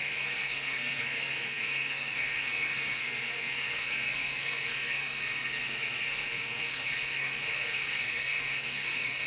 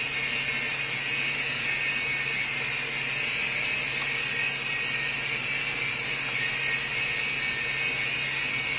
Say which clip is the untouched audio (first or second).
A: second